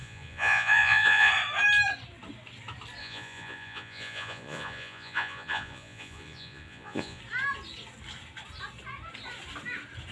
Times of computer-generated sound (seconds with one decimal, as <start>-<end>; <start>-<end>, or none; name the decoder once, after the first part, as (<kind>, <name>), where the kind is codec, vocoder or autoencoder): 0.0-1.3 (vocoder, Vocos); 3.0-7.2